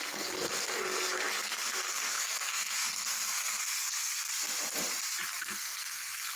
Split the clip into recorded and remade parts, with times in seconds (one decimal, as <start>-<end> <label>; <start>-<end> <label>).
0.0-4.3 remade; 4.3-5.4 recorded; 5.4-6.4 remade